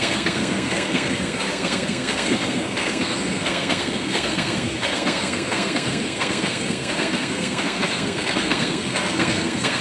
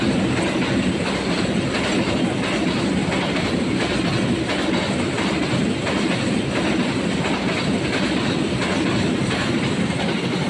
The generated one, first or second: first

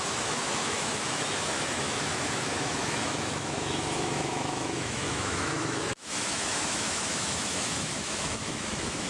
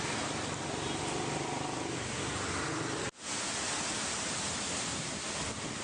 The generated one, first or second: first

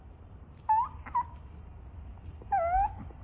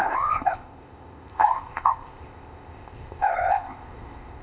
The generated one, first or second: second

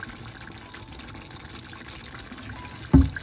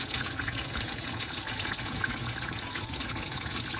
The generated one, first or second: second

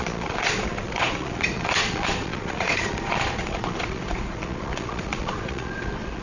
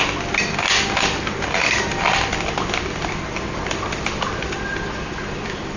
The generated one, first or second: first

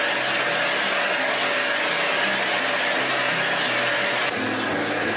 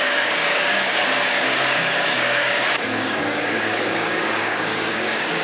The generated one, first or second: second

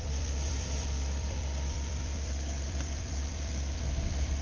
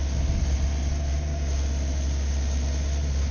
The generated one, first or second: first